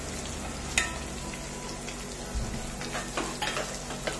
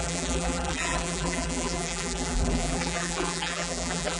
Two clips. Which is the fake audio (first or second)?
second